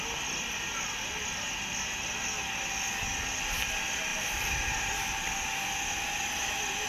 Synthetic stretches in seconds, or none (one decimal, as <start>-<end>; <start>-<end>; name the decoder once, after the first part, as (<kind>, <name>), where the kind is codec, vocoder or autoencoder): 4.1-5.3 (vocoder, BigVGAN v2)

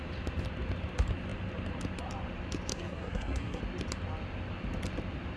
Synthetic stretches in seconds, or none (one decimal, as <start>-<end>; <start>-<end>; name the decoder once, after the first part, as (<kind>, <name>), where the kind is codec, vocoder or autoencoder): 2.7-3.6 (codec, SNAC)